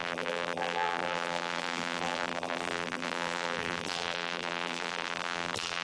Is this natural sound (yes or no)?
no